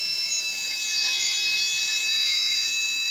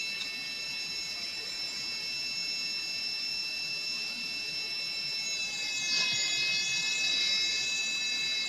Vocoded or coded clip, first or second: first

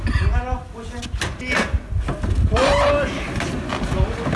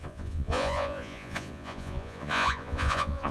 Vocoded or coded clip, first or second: second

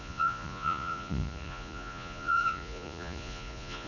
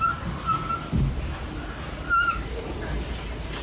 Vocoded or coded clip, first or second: first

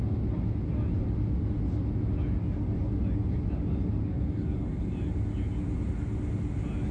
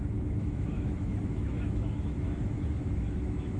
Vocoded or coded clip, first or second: second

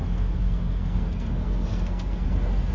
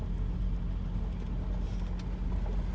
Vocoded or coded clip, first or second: first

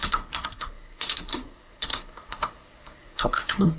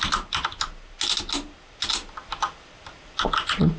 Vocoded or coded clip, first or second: first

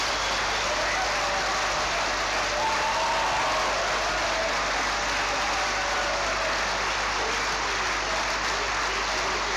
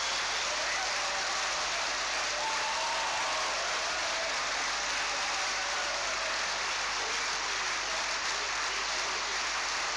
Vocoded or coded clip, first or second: second